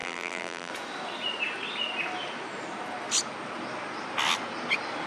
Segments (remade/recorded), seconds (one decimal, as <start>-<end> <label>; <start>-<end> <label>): 0.0-0.7 remade; 0.7-5.1 recorded